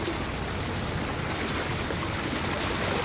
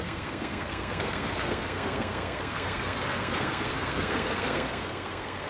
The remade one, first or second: second